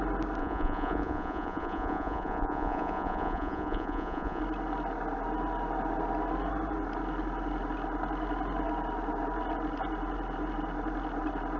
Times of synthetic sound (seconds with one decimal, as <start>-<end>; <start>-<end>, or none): 0.4-4.4